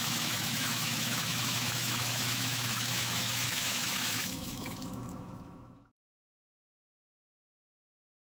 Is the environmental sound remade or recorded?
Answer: remade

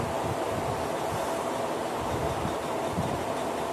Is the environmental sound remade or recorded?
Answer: recorded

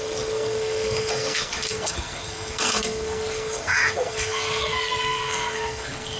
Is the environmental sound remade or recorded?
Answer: remade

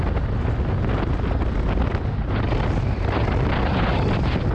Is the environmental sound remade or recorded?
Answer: recorded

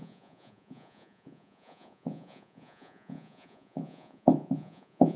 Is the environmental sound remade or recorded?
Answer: remade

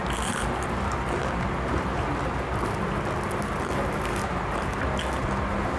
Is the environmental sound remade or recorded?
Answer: recorded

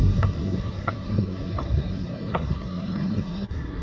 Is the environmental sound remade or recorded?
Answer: remade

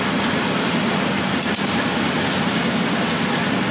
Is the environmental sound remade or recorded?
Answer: recorded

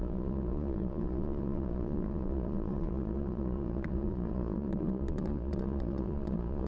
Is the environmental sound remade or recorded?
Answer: remade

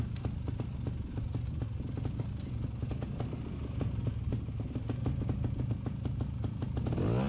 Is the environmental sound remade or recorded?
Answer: recorded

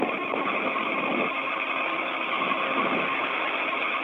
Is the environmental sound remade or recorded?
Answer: recorded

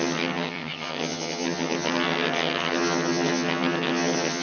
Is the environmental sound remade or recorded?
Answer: remade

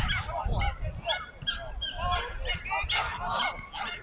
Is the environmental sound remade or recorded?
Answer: recorded